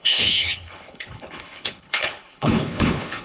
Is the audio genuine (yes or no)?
no